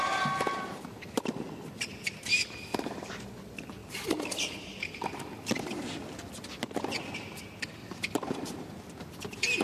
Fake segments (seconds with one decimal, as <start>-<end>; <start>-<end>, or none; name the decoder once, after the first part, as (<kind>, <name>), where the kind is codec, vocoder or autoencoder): 3.8-5.1 (vocoder, BigVGAN v2); 7.8-9.1